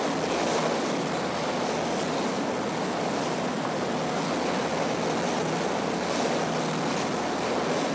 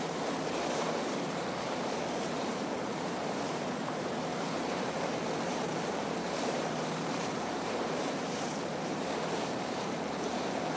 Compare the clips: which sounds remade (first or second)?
second